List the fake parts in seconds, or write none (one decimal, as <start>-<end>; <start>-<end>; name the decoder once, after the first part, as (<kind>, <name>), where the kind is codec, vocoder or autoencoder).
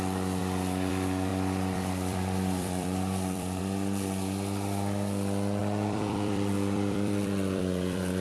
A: 1.3-3.6 (vocoder, BigVGAN v2); 5.6-8.2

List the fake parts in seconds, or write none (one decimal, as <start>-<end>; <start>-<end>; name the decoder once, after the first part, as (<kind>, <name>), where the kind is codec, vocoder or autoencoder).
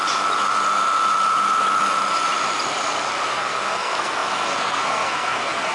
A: 3.3-5.7 (codec, SNAC)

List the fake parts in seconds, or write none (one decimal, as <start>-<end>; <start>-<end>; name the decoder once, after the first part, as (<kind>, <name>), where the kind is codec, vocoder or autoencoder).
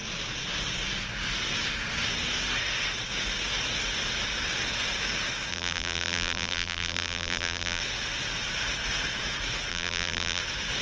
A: 5.5-7.8 (vocoder, BigVGAN v2); 9.7-10.4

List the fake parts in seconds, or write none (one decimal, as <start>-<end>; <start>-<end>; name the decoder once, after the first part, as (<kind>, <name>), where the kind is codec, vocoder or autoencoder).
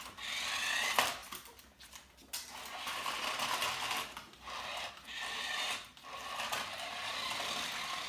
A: none